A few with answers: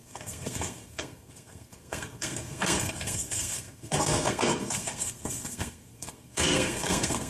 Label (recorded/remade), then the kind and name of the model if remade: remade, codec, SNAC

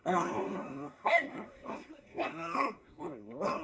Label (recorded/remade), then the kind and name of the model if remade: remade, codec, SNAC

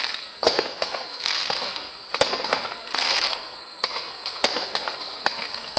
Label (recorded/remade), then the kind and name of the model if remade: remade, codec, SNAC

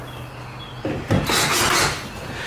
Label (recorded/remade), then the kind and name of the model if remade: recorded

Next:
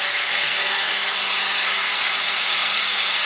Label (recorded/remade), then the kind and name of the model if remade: remade, codec, SNAC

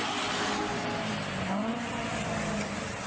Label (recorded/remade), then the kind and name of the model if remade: recorded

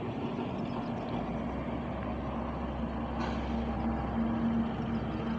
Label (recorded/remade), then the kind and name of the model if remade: recorded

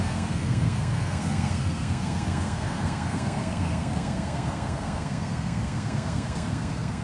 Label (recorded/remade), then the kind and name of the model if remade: remade, codec, SNAC